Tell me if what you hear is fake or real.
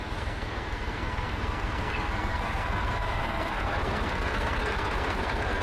fake